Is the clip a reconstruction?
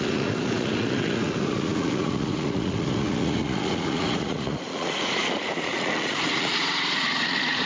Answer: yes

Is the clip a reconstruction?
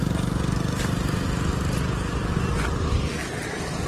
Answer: no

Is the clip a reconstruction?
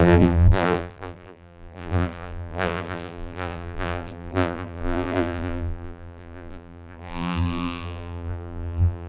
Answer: yes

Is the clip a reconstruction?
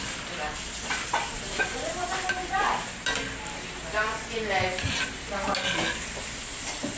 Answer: no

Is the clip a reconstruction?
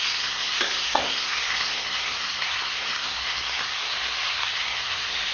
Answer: yes